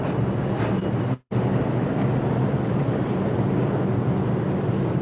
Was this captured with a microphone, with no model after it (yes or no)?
yes